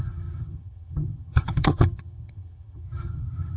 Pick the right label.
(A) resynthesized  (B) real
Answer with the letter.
A